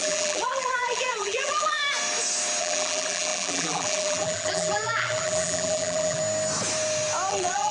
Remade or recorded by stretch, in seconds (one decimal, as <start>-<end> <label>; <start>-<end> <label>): 0.0-1.8 remade; 1.8-2.6 recorded; 2.6-6.2 remade; 6.2-7.3 recorded; 7.3-7.7 remade